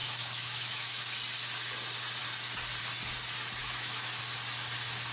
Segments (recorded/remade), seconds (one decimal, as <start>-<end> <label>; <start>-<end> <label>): 0.0-1.0 remade; 1.0-3.6 recorded; 3.6-4.2 remade; 4.2-5.1 recorded